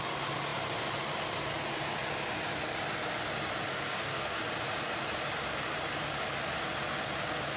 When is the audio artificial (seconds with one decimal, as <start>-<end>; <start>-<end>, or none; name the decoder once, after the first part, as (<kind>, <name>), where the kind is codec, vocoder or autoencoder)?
3.7-4.4 (codec, SNAC)